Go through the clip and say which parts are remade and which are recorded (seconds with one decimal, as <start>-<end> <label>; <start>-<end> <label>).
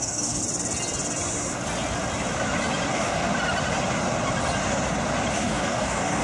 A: 0.0-0.4 remade; 0.4-2.9 recorded; 2.9-3.3 remade; 3.3-5.3 recorded; 5.3-6.2 remade